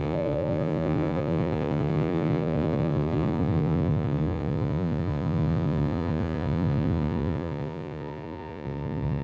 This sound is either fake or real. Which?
fake